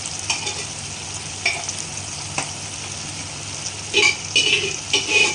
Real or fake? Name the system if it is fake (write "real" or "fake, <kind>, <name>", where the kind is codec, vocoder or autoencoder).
real